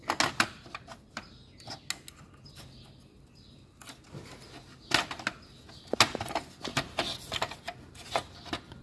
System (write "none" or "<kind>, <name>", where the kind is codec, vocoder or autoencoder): none